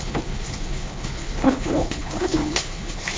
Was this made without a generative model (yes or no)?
no